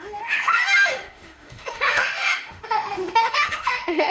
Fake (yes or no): yes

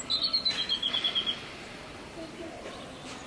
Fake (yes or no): no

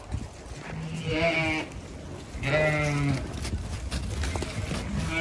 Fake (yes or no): no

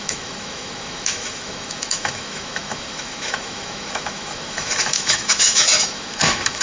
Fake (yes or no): yes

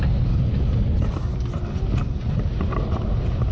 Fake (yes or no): no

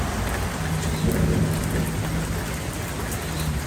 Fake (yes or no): no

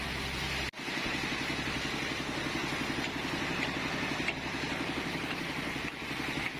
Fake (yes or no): no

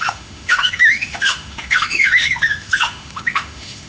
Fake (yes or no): yes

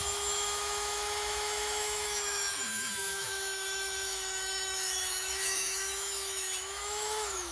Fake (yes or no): yes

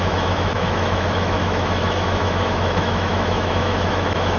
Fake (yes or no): yes